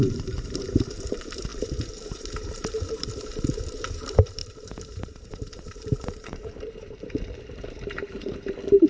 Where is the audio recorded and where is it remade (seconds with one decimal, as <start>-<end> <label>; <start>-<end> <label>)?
0.0-8.9 remade